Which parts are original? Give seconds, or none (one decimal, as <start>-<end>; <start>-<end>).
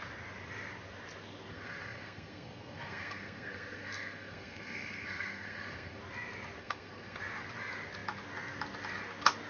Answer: 0.0-1.5; 6.0-6.6; 7.2-9.5